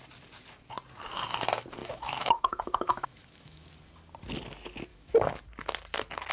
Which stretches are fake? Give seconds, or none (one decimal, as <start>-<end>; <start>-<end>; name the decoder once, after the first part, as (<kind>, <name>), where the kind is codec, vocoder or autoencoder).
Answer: 1.8-3.7 (autoencoder, DAC-VAE); 4.9-5.4